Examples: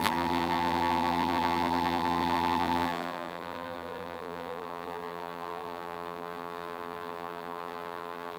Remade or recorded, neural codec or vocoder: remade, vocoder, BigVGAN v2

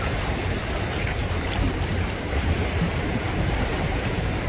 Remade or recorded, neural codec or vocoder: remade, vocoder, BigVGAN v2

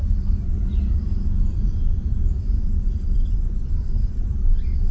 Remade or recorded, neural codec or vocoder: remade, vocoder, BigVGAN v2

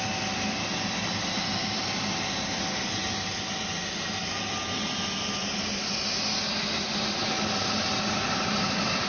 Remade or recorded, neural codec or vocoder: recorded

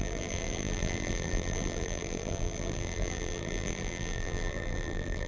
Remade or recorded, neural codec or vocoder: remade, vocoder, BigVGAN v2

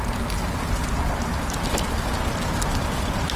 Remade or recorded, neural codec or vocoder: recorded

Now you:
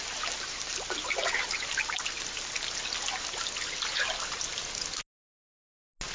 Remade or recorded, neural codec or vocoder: recorded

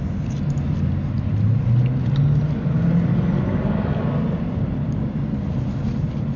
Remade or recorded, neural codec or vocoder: recorded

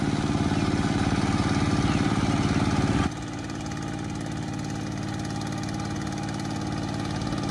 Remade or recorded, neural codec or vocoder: recorded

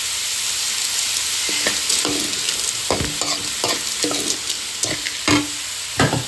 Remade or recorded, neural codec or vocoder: recorded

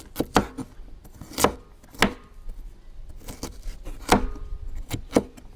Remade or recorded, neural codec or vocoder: recorded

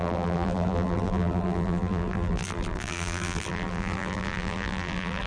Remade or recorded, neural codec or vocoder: remade, vocoder, BigVGAN v2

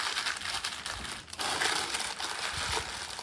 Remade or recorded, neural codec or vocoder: recorded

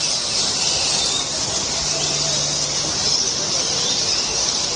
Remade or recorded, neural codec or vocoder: remade, vocoder, BigVGAN v2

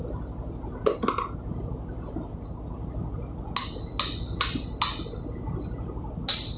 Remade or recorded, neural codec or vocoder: recorded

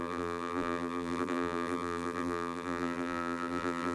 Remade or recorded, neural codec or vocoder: remade, vocoder, BigVGAN v2